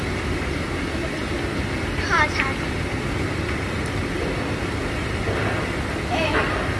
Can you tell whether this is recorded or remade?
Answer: remade